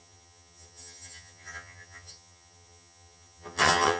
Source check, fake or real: fake